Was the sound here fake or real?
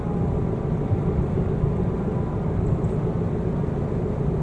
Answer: real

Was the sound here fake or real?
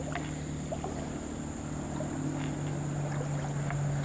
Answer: real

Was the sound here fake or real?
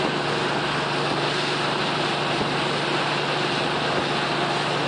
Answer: real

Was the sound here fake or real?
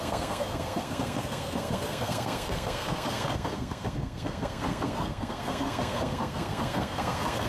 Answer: fake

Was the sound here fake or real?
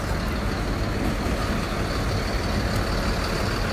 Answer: real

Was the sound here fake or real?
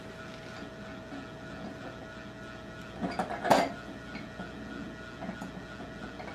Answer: real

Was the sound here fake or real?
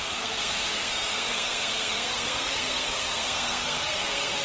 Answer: fake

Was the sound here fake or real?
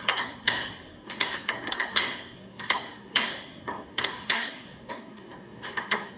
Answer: fake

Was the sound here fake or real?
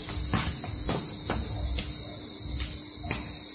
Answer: real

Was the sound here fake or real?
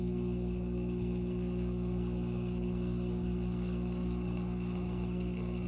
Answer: fake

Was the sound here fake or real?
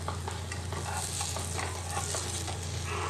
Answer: real